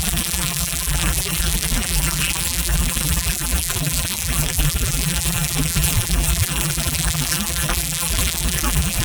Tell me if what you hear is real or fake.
fake